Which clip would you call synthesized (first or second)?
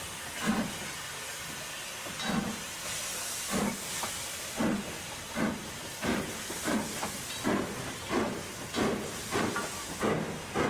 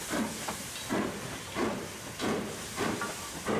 second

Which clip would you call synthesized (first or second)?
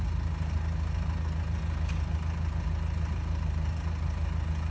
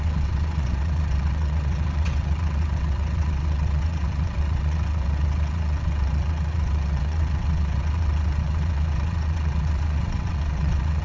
second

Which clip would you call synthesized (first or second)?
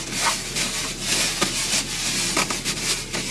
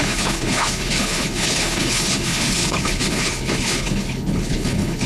second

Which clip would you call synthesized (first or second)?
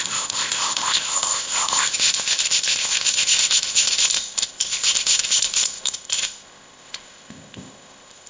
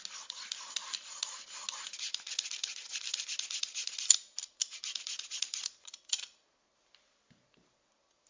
first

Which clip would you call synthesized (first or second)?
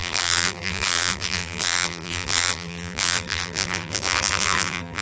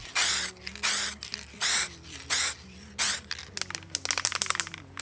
first